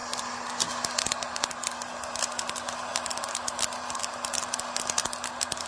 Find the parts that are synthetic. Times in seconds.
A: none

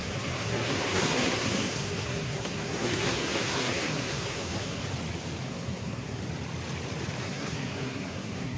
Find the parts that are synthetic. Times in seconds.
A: 0.0-4.8 (codec, SNAC); 5.4-6.2; 7.2-8.6

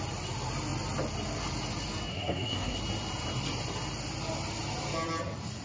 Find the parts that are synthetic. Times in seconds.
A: 2.1-2.8 (codec, SNAC)